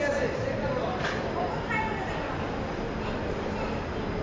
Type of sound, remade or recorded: recorded